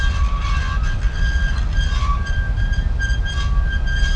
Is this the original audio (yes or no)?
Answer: yes